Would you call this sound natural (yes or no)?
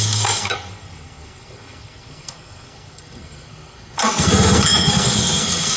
no